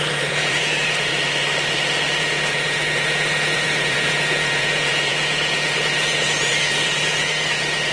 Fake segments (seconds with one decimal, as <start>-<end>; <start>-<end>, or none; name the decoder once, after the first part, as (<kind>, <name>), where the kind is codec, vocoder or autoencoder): 0.0-1.1 (vocoder, Vocos); 2.2-7.9